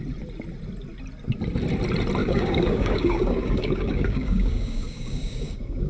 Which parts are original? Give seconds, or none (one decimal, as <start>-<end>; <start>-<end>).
0.0-2.2